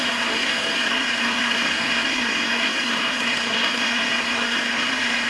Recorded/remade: remade